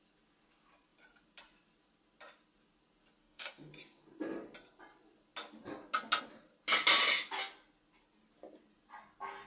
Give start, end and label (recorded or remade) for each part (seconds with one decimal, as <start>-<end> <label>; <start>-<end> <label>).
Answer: 0.0-3.2 recorded; 3.2-3.7 remade; 3.7-9.5 recorded